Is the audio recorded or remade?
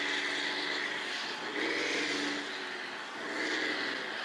recorded